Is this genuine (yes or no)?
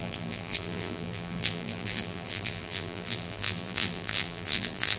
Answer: no